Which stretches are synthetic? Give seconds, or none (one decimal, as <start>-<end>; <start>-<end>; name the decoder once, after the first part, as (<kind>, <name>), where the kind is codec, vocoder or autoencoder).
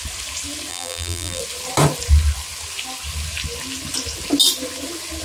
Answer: 0.7-1.4 (vocoder, BigVGAN v2)